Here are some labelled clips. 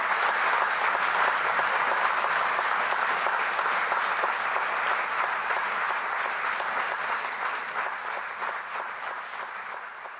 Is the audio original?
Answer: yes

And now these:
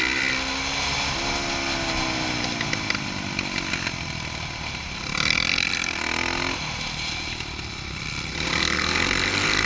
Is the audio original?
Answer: yes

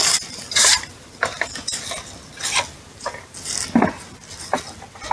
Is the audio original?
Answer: yes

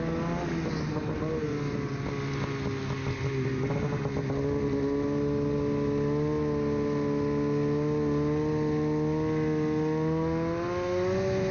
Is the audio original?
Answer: yes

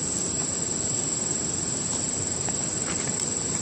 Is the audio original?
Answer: no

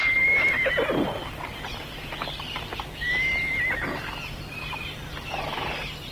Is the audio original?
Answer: yes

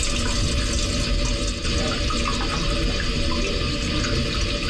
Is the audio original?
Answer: yes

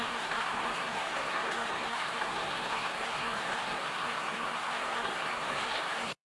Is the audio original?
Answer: no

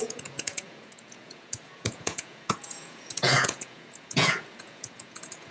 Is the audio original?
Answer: no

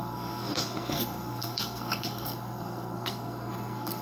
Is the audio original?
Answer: no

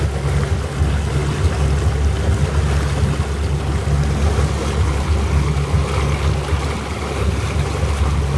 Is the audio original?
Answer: yes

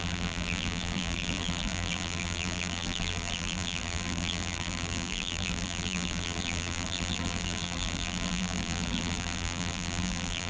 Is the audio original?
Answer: no